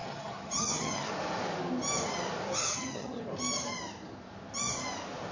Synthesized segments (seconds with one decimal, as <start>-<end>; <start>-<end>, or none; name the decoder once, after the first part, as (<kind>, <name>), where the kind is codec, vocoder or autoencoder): 0.0-1.1 (vocoder, HiFi-GAN); 2.6-3.2